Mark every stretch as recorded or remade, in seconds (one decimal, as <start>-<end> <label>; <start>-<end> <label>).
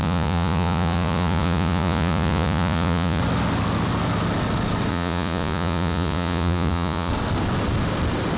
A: 0.0-3.2 remade; 3.2-4.9 recorded; 4.9-7.1 remade; 7.1-8.4 recorded